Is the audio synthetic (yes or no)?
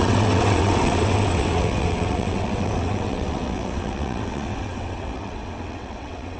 yes